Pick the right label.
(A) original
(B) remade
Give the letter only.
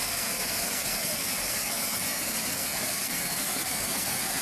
B